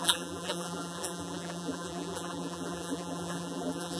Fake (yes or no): yes